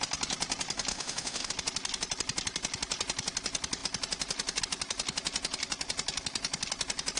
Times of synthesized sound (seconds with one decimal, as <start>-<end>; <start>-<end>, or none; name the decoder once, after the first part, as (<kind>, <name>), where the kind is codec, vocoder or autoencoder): 0.9-1.5 (autoencoder, DAC-VAE)